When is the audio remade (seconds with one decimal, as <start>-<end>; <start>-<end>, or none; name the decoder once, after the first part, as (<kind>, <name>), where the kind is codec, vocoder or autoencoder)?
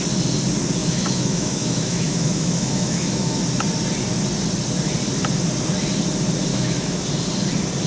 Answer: 0.8-3.4 (autoencoder, DAC-VAE); 6.5-7.0